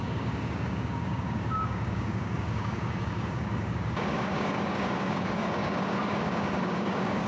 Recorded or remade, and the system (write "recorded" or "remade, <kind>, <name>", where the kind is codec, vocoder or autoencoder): remade, codec, DAC